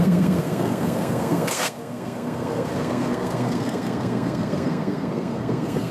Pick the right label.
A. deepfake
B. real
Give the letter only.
A